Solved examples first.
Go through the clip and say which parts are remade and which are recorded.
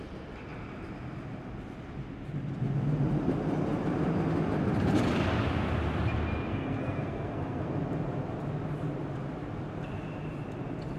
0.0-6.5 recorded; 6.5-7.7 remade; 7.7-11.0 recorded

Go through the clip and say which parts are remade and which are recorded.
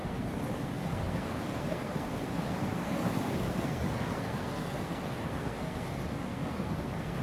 0.0-7.2 remade